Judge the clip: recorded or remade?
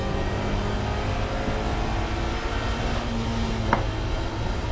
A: recorded